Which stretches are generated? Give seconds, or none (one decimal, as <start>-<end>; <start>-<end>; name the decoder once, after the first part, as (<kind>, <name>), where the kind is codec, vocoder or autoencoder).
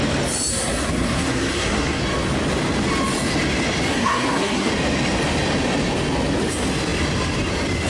0.5-2.0 (codec, SNAC); 3.9-4.7